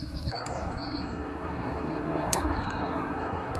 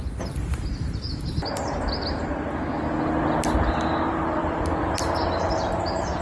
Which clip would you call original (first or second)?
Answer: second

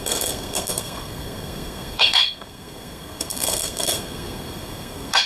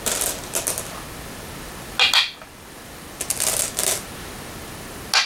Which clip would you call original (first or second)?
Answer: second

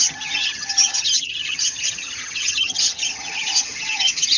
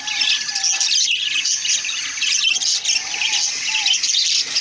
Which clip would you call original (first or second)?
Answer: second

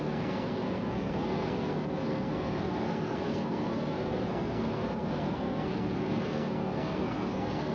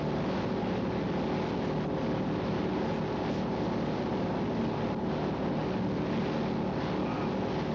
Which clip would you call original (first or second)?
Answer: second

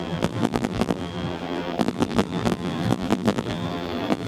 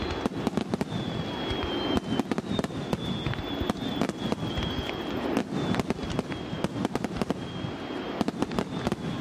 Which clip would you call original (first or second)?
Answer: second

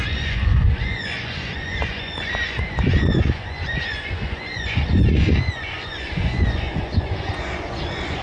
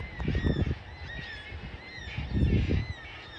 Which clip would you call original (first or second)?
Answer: second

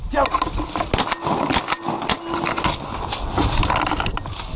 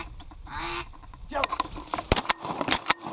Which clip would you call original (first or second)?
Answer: first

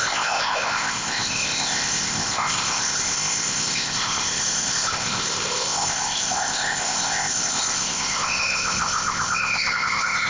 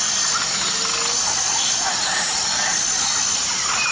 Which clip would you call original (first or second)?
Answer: second